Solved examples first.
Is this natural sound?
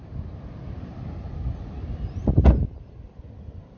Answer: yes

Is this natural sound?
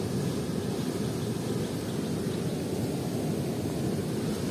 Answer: yes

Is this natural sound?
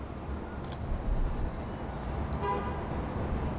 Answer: yes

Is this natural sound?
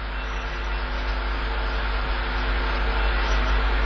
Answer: yes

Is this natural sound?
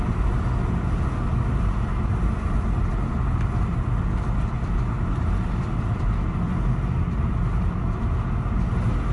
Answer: yes